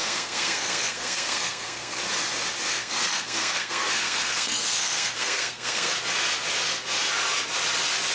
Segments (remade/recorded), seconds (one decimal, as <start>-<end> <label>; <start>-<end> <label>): 0.0-2.0 remade; 2.0-2.7 recorded; 2.7-5.9 remade; 5.9-8.1 recorded